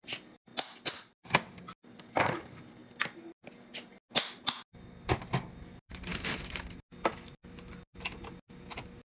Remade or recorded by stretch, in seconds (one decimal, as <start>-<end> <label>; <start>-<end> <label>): 0.0-9.1 recorded